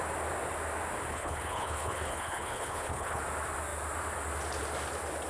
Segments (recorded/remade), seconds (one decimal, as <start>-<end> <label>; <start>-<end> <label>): 0.0-1.1 recorded; 1.1-3.2 remade; 3.2-5.3 recorded